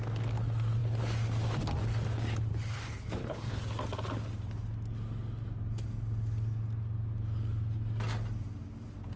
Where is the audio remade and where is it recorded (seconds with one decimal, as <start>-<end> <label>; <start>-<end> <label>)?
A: 0.0-2.5 recorded; 2.5-3.6 remade; 3.6-9.2 recorded